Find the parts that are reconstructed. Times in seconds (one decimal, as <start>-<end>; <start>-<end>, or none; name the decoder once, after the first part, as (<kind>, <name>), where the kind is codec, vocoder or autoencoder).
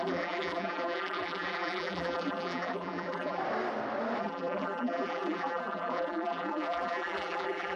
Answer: 0.0-3.4 (vocoder, BigVGAN v2); 4.2-7.8